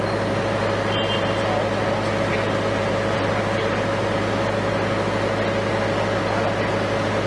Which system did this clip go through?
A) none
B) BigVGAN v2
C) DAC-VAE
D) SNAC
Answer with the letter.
A